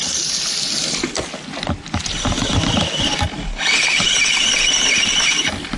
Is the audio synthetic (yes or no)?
no